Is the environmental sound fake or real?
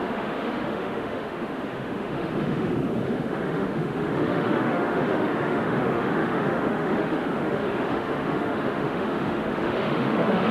fake